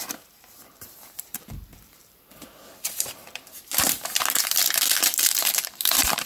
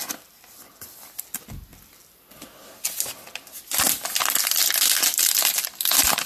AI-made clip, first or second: first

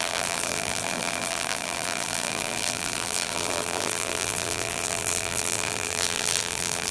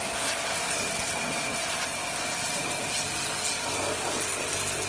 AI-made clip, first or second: first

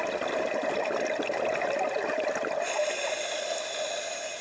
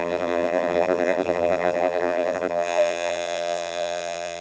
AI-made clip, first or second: second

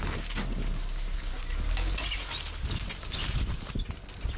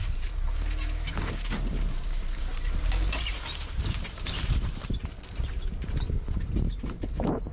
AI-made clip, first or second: second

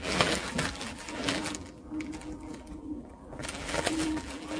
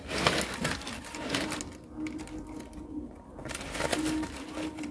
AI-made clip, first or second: first